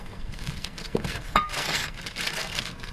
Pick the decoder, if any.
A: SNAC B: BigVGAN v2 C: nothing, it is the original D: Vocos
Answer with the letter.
A